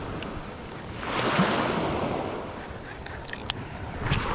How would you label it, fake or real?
real